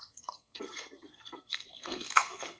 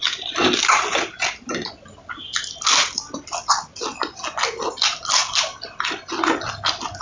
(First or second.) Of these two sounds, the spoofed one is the first